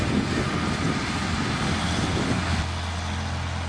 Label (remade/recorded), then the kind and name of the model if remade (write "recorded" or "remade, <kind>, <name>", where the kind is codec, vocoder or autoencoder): recorded